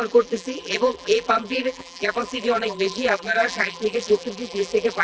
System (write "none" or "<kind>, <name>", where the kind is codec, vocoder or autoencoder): vocoder, BigVGAN v2